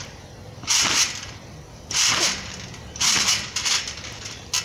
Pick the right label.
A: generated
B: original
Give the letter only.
B